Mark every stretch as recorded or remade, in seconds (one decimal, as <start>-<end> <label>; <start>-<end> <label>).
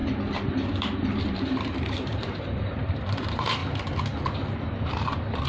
0.0-3.6 remade; 3.6-5.5 recorded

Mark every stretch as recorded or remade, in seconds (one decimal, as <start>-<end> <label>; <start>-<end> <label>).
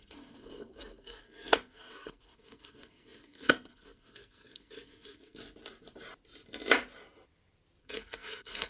0.0-5.4 remade; 5.4-7.8 recorded; 7.8-8.7 remade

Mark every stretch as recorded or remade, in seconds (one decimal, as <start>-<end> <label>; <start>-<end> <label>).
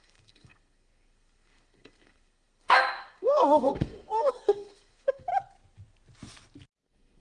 0.0-5.3 remade; 5.3-6.8 recorded; 6.8-7.2 remade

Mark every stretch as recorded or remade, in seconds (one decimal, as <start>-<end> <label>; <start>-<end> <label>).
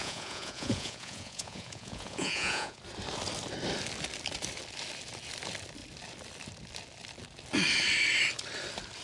0.0-2.8 remade; 2.8-9.0 recorded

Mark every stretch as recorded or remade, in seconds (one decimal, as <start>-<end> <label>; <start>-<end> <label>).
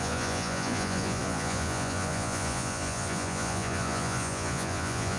0.0-5.2 remade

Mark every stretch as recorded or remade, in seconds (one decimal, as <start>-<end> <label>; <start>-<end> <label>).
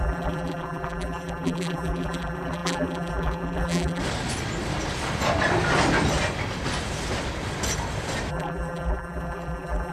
0.0-4.0 remade; 4.0-8.3 recorded; 8.3-9.9 remade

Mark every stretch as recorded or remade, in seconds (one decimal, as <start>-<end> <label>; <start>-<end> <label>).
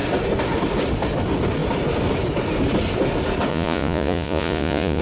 0.0-3.5 recorded; 3.5-5.0 remade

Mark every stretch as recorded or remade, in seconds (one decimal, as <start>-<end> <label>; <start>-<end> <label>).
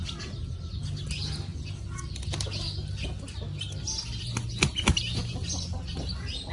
0.0-6.5 recorded